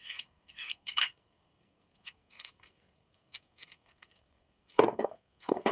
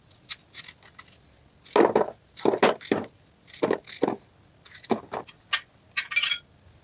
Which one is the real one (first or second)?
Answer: second